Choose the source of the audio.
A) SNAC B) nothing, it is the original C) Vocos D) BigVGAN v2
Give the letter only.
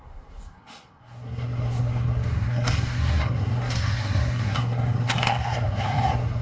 A